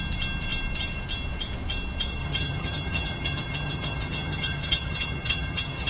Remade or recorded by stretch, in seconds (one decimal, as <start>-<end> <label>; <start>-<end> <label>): 0.0-2.2 recorded; 2.2-5.9 remade